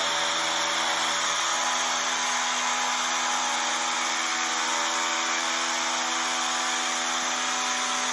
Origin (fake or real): real